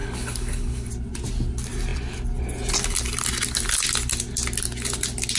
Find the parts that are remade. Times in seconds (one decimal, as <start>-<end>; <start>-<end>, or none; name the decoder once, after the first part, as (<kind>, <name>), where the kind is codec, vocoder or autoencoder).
0.0-0.9 (codec, HILCodec)